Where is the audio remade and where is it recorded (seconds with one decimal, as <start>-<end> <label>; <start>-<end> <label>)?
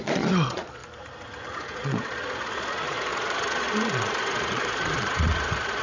0.0-0.8 remade; 0.8-1.6 recorded; 1.6-5.8 remade